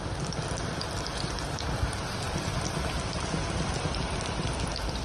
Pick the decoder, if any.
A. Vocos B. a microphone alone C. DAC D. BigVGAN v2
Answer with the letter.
B